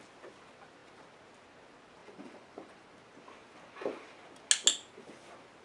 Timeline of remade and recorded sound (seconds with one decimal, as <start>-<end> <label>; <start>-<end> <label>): 0.0-2.0 recorded; 2.0-2.9 remade; 2.9-5.6 recorded